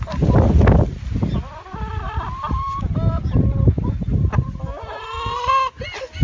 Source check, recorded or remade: recorded